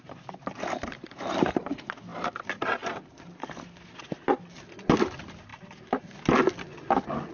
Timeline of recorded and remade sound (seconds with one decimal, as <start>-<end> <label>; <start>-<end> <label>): 0.0-0.8 recorded; 0.8-1.6 remade; 1.6-2.1 recorded; 2.1-2.9 remade; 2.9-5.5 recorded; 5.5-6.0 remade; 6.0-7.3 recorded